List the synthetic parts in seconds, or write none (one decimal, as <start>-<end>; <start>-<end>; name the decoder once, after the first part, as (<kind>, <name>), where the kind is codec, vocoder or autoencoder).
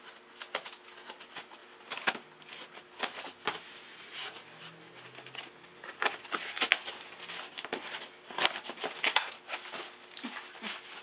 3.9-4.4 (vocoder, Vocos)